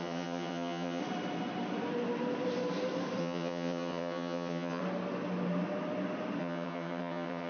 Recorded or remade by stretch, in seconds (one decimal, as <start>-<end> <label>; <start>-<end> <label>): 0.0-1.0 remade; 1.0-3.2 recorded; 3.2-4.8 remade; 4.8-6.4 recorded; 6.4-7.5 remade